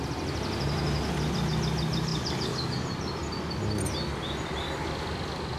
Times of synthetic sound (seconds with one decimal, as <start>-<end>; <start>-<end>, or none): none